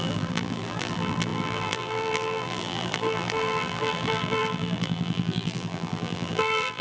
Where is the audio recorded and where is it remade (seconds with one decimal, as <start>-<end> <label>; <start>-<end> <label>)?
0.0-6.8 remade

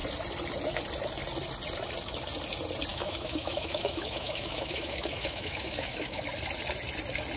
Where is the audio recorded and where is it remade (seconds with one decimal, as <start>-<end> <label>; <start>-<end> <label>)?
0.0-2.9 recorded; 2.9-6.2 remade; 6.2-7.4 recorded

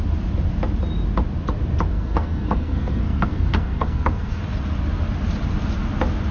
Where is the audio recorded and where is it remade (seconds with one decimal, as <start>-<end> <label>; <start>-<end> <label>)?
0.0-1.9 recorded; 1.9-4.4 remade; 4.4-6.3 recorded

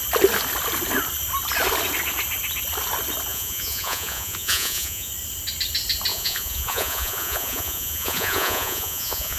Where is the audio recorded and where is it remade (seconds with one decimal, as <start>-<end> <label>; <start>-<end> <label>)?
0.0-3.3 recorded; 3.3-5.1 remade; 5.1-6.1 recorded; 6.1-9.4 remade

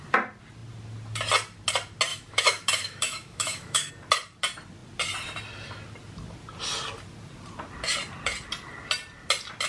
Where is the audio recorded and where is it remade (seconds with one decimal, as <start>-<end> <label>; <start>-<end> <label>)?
0.0-2.1 recorded; 2.1-3.9 remade; 3.9-9.7 recorded

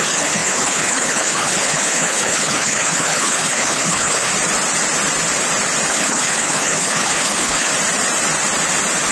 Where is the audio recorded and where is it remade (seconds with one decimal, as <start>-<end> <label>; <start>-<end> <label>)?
0.0-4.3 remade; 4.3-5.9 recorded; 5.9-7.7 remade; 7.7-9.1 recorded